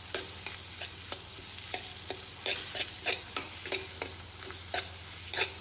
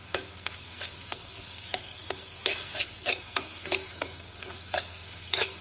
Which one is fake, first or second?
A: second